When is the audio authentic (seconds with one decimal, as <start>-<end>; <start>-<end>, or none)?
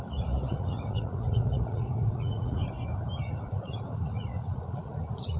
2.6-3.2